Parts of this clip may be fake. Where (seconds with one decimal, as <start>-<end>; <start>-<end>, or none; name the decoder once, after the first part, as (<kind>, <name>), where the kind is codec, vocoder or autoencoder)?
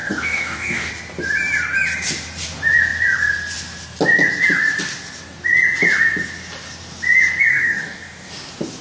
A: 0.0-0.9 (codec, DAC); 7.5-8.3